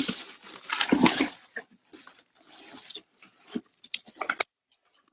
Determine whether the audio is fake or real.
real